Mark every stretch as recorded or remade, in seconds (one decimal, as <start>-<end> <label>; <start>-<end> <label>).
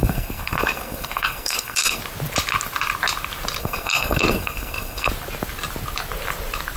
0.0-2.0 remade; 2.0-3.6 recorded; 3.6-5.1 remade; 5.1-6.8 recorded